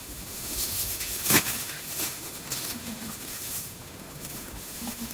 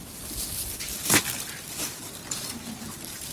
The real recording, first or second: second